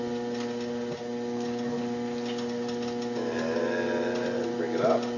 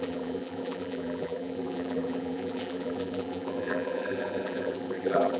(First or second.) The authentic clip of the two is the first